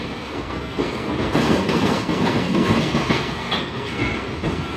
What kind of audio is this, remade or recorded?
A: remade